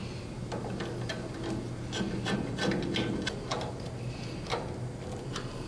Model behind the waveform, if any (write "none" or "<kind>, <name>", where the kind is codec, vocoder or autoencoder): none